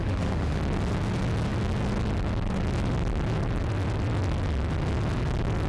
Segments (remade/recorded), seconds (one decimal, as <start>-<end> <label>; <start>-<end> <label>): 0.0-0.6 remade; 0.6-5.7 recorded